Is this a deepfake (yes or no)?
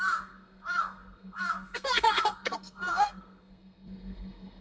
yes